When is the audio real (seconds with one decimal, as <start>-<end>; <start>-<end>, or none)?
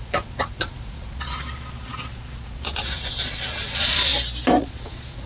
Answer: 4.1-4.6